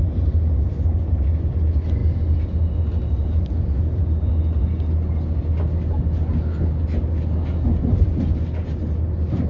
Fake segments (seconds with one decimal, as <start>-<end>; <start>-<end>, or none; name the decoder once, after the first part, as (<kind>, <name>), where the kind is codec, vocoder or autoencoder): none